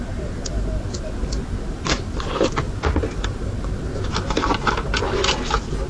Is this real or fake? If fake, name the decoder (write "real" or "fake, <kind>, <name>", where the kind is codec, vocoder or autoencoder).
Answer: real